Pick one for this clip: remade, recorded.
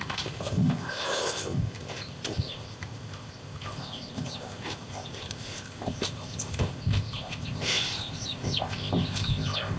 remade